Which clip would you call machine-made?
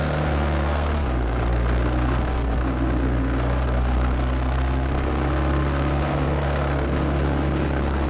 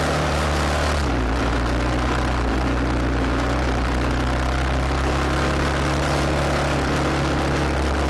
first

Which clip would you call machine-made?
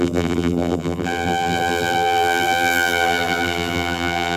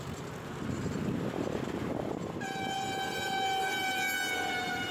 first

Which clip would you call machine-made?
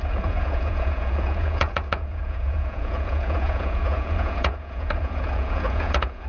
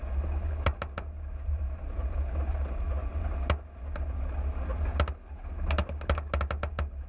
first